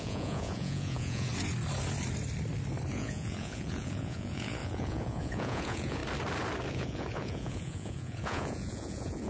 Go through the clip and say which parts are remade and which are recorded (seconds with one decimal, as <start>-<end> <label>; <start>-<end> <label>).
0.0-1.3 remade; 1.3-2.9 recorded; 2.9-6.0 remade; 6.0-6.7 recorded; 6.7-9.3 remade